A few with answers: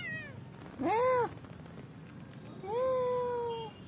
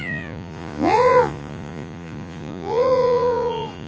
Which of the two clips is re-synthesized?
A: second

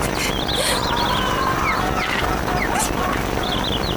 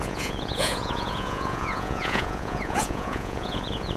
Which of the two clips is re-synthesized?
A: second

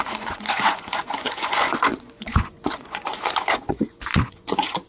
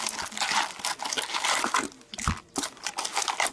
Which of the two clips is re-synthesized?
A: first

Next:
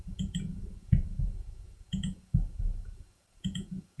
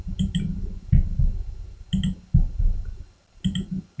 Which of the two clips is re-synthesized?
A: first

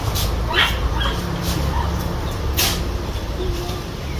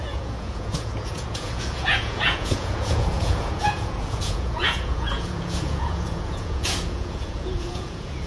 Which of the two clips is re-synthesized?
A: second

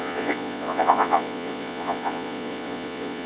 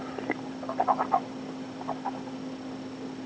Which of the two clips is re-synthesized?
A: first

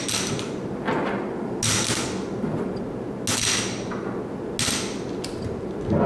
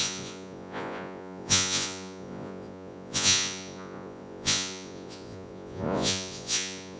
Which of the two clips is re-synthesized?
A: second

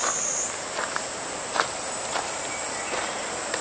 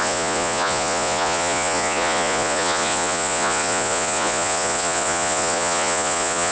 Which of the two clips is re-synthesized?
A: second